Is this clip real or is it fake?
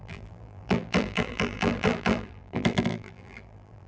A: fake